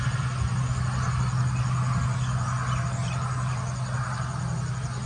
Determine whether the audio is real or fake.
real